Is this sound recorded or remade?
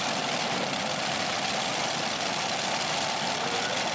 recorded